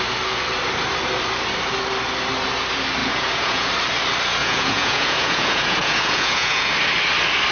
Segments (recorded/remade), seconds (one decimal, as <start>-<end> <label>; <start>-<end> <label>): 0.0-3.0 recorded; 3.0-3.7 remade; 3.7-4.4 recorded; 4.4-6.7 remade; 6.7-7.5 recorded